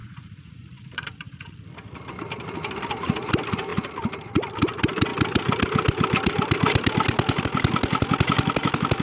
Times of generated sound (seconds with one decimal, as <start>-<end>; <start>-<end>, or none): 0.0-1.5